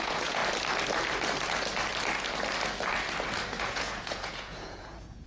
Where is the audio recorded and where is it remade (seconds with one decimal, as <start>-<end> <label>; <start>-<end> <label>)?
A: 0.0-0.4 remade; 0.4-3.6 recorded; 3.6-5.3 remade

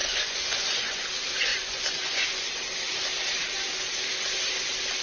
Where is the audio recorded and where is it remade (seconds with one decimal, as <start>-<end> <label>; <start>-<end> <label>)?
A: 0.0-1.1 remade; 1.1-1.5 recorded; 1.5-2.6 remade; 2.6-5.0 recorded

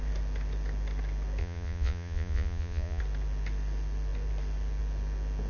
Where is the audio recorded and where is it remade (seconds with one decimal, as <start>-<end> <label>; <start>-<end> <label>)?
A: 0.0-1.4 recorded; 1.4-3.0 remade; 3.0-5.5 recorded

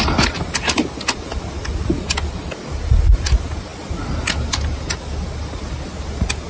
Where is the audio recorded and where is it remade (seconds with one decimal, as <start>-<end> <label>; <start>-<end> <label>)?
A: 0.0-6.5 recorded

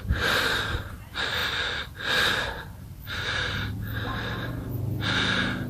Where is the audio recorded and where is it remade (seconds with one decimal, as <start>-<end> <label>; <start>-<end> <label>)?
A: 0.0-5.7 recorded